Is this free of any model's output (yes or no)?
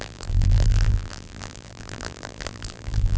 no